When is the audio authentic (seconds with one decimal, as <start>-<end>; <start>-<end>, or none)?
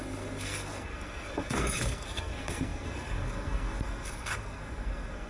none